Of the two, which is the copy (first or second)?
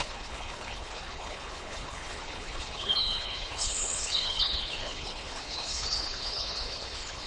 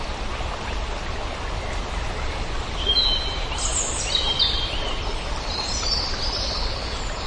first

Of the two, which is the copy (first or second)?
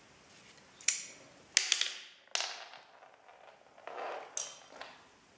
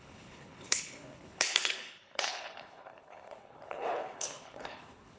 second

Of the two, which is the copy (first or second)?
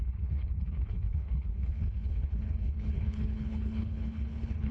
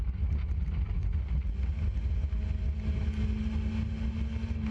first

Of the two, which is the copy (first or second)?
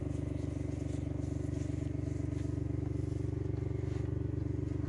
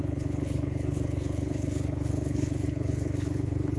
second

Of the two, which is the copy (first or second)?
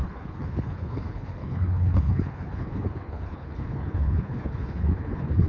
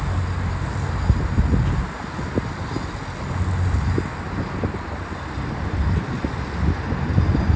first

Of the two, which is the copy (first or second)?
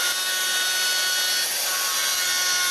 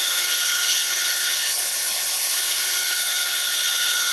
second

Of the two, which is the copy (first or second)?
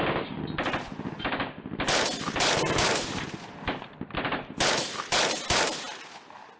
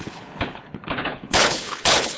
second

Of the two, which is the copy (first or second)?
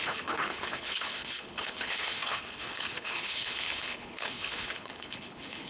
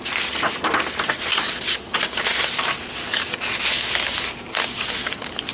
first